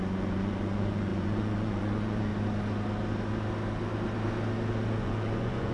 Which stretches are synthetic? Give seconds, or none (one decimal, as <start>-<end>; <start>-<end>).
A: 0.0-2.3; 5.0-5.7

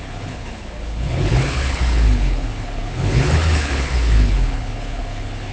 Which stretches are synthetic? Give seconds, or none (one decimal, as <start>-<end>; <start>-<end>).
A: 0.0-5.5